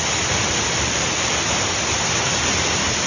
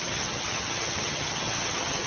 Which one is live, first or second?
first